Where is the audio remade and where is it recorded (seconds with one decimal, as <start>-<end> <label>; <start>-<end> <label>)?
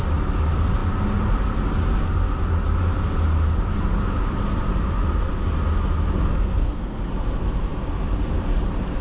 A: 0.0-6.3 recorded; 6.3-7.1 remade; 7.1-9.0 recorded